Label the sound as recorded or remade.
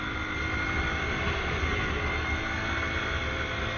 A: recorded